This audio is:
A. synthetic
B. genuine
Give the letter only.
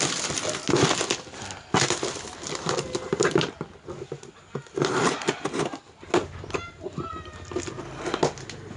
B